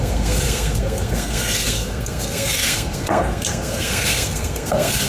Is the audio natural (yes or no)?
no